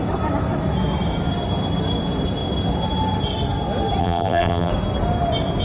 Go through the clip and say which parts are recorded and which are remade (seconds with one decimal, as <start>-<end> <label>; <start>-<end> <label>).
0.0-4.0 recorded; 4.0-4.7 remade; 4.7-5.6 recorded